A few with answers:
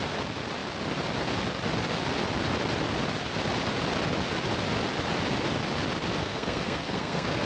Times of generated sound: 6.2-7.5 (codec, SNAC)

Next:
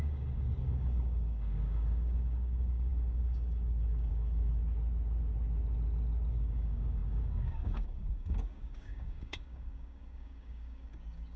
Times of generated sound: 0.0-4.6 (codec, DAC); 6.3-11.4

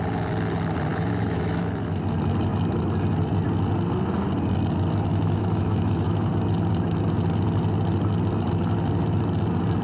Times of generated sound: 0.9-1.6 (autoencoder, DAC-VAE); 5.1-6.3

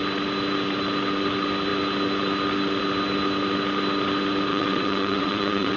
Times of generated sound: 4.5-5.8 (vocoder, WaveNeXt)

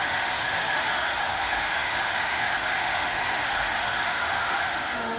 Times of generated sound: 0.0-5.2 (autoencoder, DAC-VAE)

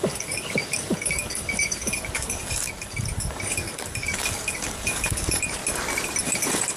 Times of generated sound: 0.0-5.6 (codec, DAC); 6.2-6.8

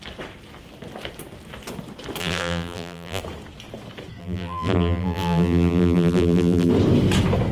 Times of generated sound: 2.2-3.2 (vocoder, BigVGAN v2); 4.2-6.7

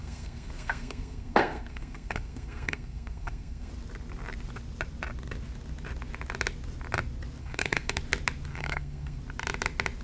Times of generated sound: 0.0-3.7 (codec, SNAC); 7.4-8.0; 8.5-9.2